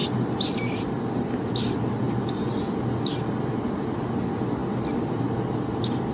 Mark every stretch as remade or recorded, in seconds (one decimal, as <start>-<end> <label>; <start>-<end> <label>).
0.0-6.1 recorded